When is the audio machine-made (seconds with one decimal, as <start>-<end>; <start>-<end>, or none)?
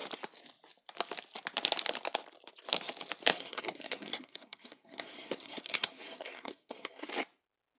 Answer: 3.3-7.1